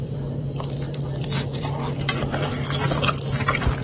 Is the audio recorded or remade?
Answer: remade